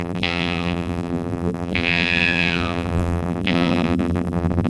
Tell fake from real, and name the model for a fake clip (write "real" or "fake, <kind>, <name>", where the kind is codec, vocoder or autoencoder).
fake, vocoder, BigVGAN v2